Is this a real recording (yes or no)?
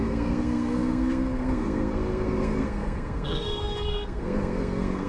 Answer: no